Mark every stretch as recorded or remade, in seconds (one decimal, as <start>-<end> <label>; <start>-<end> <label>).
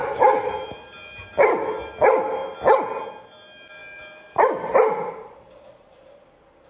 0.0-0.5 remade; 0.5-6.7 recorded